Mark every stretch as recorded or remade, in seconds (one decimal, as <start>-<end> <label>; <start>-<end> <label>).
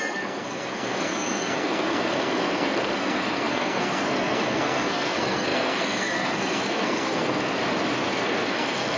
0.0-7.6 remade; 7.6-8.1 recorded; 8.1-9.0 remade